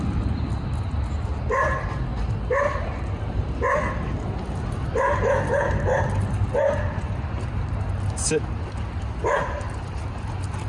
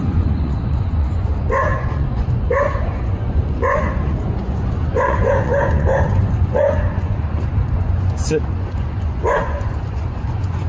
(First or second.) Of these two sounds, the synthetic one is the second